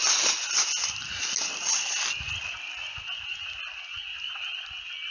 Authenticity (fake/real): real